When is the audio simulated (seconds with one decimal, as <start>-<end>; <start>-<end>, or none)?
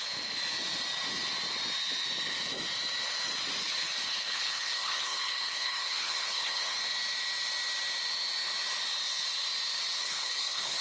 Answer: 3.6-6.8; 10.0-10.8